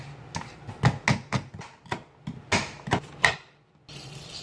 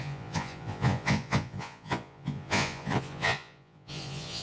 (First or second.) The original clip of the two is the first